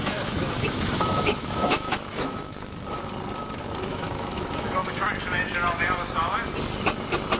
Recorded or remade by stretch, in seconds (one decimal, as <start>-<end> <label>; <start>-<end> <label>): 0.0-3.1 remade; 3.1-3.9 recorded; 3.9-4.9 remade; 4.9-7.4 recorded